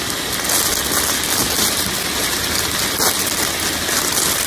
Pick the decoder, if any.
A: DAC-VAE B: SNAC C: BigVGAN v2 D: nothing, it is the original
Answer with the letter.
D